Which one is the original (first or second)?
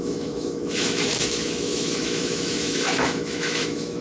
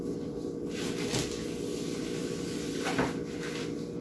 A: second